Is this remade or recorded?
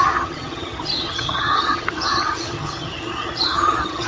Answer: remade